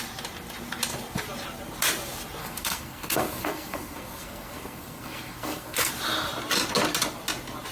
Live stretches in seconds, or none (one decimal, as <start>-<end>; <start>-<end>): 0.0-2.4; 5.9-7.7